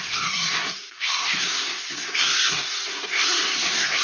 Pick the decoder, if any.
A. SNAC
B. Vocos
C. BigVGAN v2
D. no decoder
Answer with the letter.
A